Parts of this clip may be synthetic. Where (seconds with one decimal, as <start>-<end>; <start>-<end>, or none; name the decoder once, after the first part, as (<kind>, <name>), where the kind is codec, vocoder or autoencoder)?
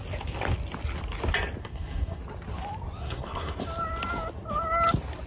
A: 1.6-2.2 (codec, SNAC); 3.0-3.6